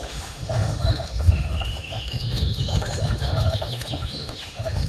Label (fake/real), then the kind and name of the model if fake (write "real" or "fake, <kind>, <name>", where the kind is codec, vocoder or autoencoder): fake, autoencoder, DAC-VAE